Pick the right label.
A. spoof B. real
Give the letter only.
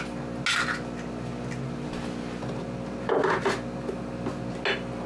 B